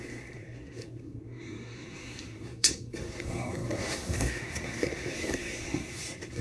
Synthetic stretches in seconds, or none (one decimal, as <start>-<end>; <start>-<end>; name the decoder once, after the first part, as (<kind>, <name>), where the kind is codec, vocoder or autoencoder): 0.0-6.4 (codec, SNAC)